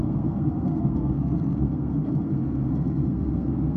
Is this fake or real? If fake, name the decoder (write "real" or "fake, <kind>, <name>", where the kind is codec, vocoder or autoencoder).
fake, codec, SNAC